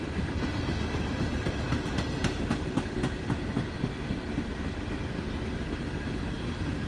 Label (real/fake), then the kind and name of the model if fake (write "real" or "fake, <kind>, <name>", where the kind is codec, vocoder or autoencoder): real